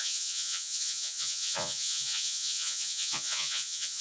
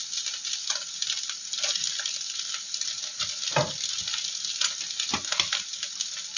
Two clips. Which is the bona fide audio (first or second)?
second